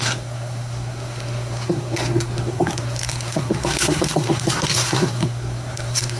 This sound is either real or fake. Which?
fake